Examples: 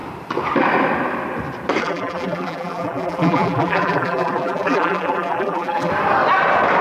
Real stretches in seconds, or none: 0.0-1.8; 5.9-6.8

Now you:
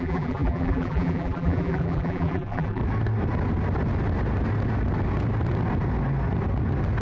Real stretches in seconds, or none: 2.8-7.0

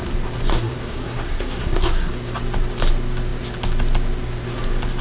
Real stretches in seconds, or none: 0.0-0.5; 2.1-5.0

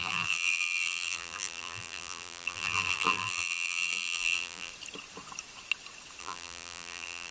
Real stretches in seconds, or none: 4.7-6.2

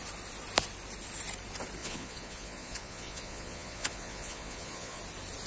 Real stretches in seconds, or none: 0.0-1.8; 5.0-5.5

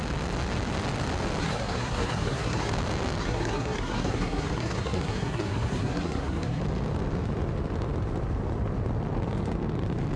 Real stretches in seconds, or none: 0.0-1.4; 2.7-3.2; 6.6-10.2

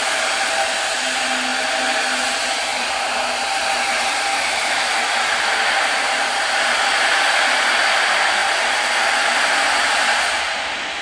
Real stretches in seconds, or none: 0.0-4.3; 4.9-11.0

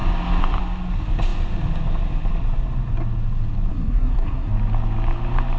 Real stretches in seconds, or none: 0.0-3.7; 4.5-5.6